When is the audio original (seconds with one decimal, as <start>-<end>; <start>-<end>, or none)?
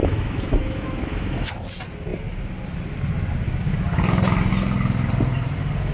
1.5-5.9